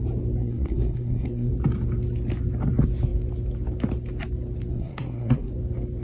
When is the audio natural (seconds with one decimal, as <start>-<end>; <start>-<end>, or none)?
0.0-0.4; 1.5-4.7; 5.5-6.0